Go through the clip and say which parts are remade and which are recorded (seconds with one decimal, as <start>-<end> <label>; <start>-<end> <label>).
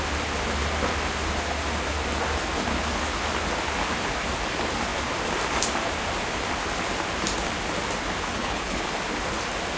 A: 0.0-8.4 recorded; 8.4-8.9 remade; 8.9-9.8 recorded